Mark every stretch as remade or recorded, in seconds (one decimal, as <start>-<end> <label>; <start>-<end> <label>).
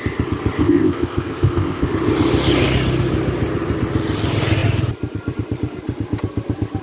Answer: 0.0-0.6 recorded; 0.6-1.9 remade; 1.9-6.8 recorded